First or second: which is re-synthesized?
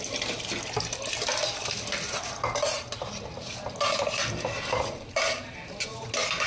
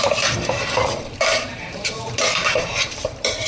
second